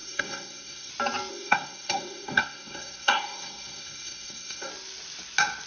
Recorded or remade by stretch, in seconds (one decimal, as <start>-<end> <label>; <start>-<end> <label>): 0.0-0.9 remade; 0.9-1.3 recorded; 1.3-4.7 remade; 4.7-5.7 recorded